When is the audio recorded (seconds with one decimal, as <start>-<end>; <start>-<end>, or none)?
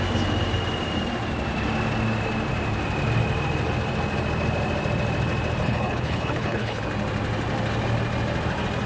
0.0-5.6; 6.8-8.9